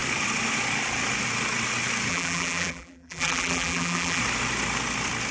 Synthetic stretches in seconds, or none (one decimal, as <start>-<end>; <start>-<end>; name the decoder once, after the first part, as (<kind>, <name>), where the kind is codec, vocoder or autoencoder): 2.1-4.2 (vocoder, BigVGAN v2)